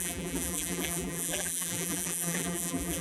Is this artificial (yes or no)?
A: yes